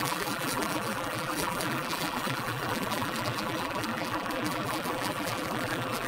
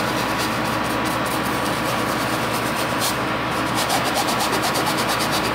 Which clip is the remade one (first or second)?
first